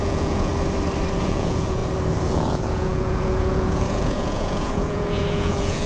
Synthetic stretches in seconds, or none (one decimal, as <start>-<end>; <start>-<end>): 0.0-0.5; 1.2-1.8; 2.3-5.9